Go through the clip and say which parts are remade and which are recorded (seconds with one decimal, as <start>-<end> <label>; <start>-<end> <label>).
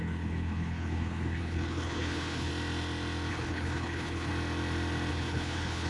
0.0-2.5 remade; 2.5-3.3 recorded; 3.3-4.3 remade; 4.3-5.1 recorded; 5.1-5.9 remade